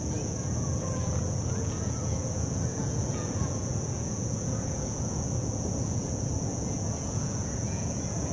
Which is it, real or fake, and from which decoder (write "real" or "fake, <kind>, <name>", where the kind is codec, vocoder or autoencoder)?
fake, vocoder, Vocos